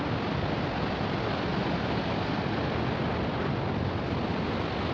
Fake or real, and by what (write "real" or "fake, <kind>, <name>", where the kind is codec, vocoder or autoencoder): real